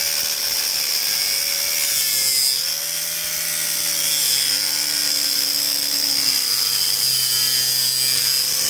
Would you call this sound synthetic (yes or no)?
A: no